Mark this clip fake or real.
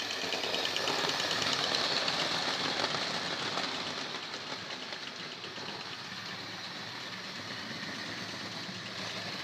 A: real